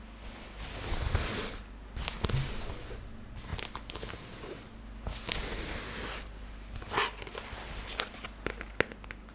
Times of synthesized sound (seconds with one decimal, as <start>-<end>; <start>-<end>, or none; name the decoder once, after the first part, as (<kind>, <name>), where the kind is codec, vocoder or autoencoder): none